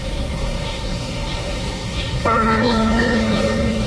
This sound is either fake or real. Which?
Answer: fake